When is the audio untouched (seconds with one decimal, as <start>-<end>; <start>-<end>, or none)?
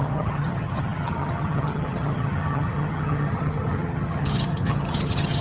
none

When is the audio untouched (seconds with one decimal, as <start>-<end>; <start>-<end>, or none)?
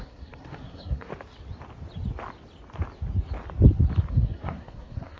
1.1-4.1